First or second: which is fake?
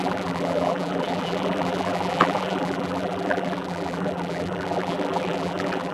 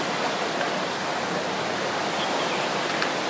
first